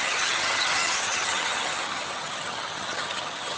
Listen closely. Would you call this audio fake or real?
fake